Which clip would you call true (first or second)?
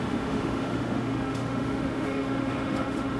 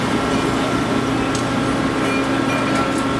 second